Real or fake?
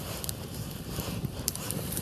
fake